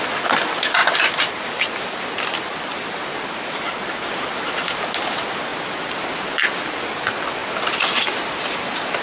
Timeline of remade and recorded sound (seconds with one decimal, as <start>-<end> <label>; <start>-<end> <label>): 0.0-0.8 recorded; 0.8-4.1 remade; 4.1-7.4 recorded; 7.4-8.0 remade; 8.0-9.0 recorded